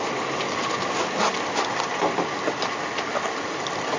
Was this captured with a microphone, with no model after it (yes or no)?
yes